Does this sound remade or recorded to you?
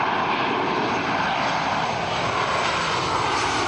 remade